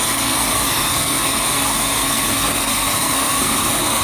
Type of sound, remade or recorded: remade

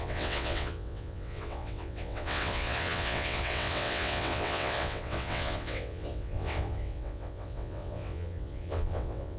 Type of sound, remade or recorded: remade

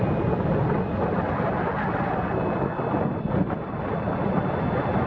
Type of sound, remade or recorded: recorded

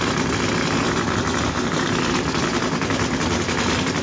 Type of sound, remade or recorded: recorded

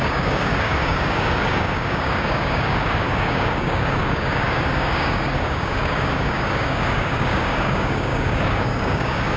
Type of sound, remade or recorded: remade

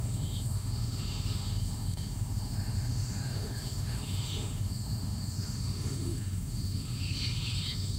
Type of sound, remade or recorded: remade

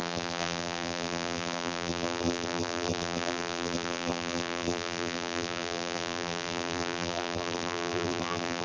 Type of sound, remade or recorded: remade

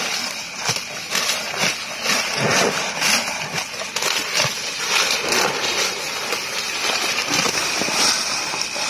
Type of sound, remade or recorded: recorded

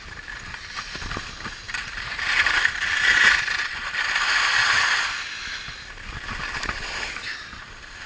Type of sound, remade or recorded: recorded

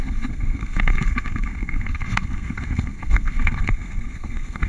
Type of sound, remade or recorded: remade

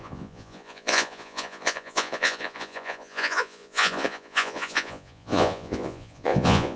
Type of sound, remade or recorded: remade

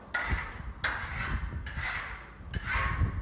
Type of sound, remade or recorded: recorded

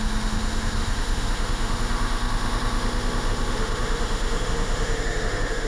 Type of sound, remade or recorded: remade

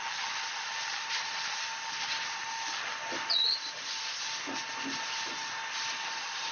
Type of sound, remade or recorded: recorded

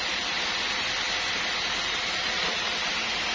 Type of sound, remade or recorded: recorded